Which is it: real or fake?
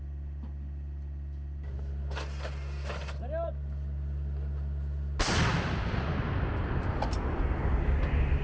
real